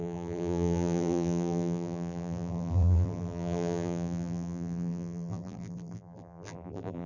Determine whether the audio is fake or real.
fake